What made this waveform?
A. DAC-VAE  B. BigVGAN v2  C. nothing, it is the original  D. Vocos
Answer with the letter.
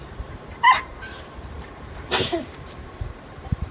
B